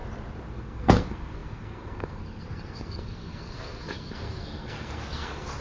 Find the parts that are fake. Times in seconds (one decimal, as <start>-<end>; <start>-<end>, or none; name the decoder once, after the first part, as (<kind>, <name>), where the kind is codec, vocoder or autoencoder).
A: 0.5-5.6 (codec, SNAC)

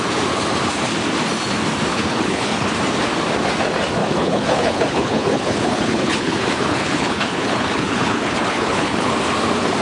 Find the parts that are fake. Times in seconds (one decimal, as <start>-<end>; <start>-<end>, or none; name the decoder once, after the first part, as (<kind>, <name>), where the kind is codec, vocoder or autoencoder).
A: 1.9-2.7 (codec, HILCodec); 4.0-9.1

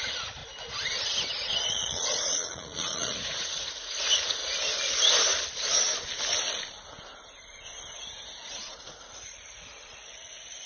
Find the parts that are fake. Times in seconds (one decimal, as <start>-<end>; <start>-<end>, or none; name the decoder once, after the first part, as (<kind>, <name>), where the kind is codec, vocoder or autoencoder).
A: 0.0-0.4 (vocoder, Vocos); 1.7-4.4; 8.8-10.7

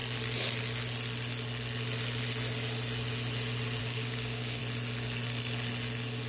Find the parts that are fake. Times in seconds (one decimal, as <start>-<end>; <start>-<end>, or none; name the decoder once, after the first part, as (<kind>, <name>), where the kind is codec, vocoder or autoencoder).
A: 3.8-4.6 (codec, DAC)

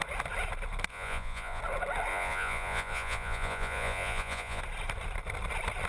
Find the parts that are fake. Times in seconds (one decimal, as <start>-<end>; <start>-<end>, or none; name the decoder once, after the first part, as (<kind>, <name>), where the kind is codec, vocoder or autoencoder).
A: 0.9-1.6 (vocoder, Vocos); 2.1-4.6

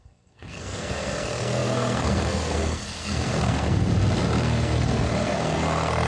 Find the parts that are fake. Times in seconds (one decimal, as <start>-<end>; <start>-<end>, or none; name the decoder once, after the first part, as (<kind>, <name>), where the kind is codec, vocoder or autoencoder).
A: 0.0-3.9 (codec, SNAC); 4.4-6.1

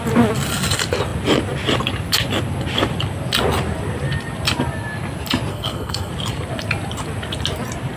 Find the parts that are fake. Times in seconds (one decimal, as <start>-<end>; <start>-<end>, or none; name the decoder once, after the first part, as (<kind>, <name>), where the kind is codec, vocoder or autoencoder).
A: 5.5-6.1 (codec, SNAC)

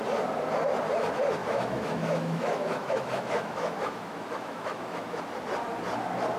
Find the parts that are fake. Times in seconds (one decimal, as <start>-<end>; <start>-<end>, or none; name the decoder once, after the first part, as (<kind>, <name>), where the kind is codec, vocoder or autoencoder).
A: 1.4-5.2 (autoencoder, DAC-VAE)